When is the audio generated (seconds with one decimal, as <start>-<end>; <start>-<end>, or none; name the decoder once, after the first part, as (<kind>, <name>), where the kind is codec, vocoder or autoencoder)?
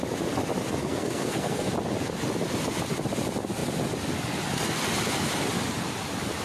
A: 0.8-1.7 (codec, SNAC)